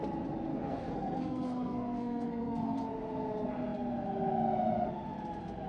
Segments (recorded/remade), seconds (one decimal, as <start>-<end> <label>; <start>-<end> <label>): 0.0-0.5 recorded; 0.5-2.9 remade; 2.9-5.7 recorded